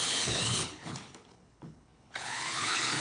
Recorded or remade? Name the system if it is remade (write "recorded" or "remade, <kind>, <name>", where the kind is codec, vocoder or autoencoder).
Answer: remade, codec, HILCodec